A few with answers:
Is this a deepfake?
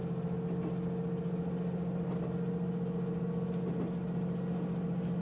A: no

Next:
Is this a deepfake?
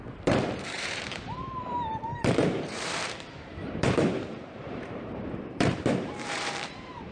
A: yes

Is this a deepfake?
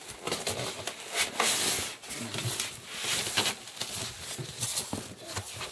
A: no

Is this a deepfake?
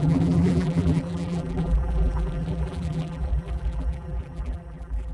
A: yes